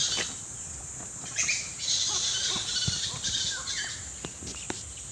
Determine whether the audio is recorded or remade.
recorded